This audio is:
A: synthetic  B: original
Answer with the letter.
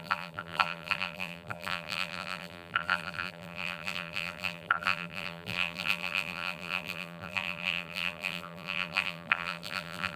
A